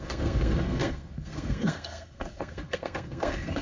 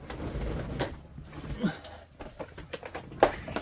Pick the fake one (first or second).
first